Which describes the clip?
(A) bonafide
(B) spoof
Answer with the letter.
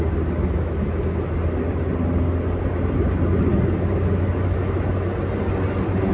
A